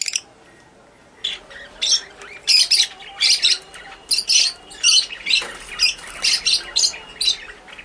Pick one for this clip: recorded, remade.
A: recorded